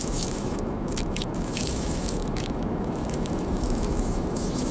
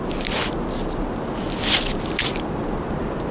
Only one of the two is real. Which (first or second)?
second